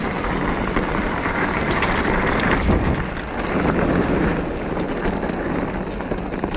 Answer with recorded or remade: recorded